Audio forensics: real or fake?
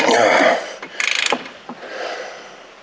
fake